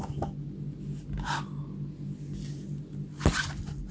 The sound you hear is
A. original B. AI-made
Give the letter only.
A